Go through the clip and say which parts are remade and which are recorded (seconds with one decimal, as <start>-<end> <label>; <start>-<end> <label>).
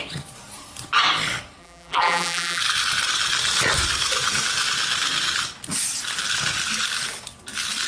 0.0-1.6 recorded; 1.6-2.6 remade; 2.6-7.9 recorded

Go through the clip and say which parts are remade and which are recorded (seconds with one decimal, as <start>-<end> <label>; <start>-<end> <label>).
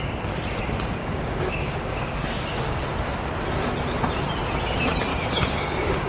0.0-1.0 recorded; 1.0-2.8 remade; 2.8-5.1 recorded; 5.1-6.1 remade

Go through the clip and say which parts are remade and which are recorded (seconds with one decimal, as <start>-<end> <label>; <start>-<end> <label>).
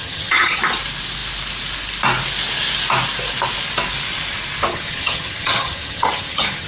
0.0-0.6 remade; 0.6-4.7 recorded; 4.7-6.7 remade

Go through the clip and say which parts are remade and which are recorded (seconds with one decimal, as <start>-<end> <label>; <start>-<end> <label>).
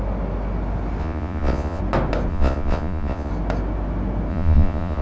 0.0-1.0 recorded; 1.0-1.8 remade; 1.8-2.3 recorded; 2.3-3.3 remade; 3.3-4.3 recorded; 4.3-5.0 remade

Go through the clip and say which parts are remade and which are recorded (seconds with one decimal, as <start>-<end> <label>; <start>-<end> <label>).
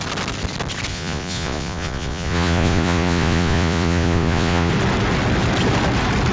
0.0-0.9 recorded; 0.9-4.7 remade; 4.7-6.3 recorded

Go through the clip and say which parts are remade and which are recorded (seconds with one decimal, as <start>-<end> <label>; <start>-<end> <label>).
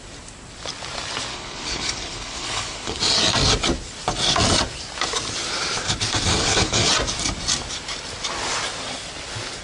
0.0-1.3 recorded; 1.3-3.0 remade; 3.0-6.3 recorded; 6.3-6.9 remade; 6.9-9.6 recorded